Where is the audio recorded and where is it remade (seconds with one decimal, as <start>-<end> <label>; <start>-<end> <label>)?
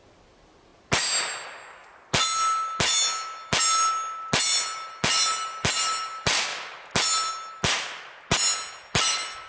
0.0-9.5 recorded